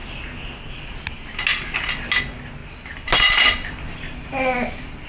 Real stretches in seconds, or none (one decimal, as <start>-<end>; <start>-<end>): 0.0-5.1